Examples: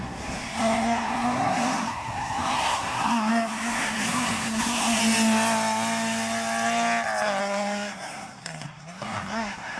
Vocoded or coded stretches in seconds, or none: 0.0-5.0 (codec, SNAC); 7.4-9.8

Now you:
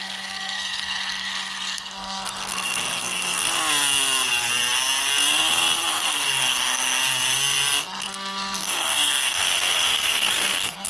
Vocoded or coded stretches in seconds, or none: 0.0-3.4 (codec, SNAC); 5.9-7.0; 7.8-10.9

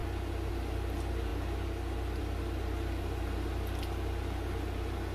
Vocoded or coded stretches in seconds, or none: none

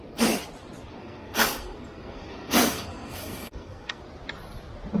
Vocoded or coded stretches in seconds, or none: 1.0-4.0 (codec, SNAC)

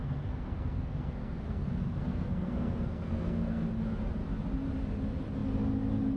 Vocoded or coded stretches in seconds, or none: 0.0-3.7 (codec, SNAC)

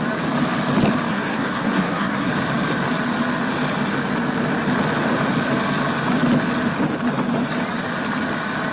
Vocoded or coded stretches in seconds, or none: 1.1-2.3 (codec, SNAC)

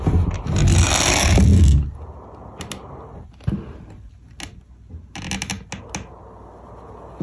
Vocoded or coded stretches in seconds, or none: none